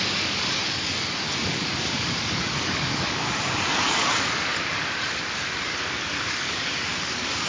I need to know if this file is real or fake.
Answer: fake